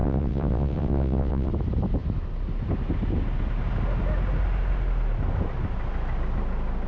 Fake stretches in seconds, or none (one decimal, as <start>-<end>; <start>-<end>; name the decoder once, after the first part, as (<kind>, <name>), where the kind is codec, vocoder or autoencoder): 0.0-1.5 (vocoder, WaveNeXt)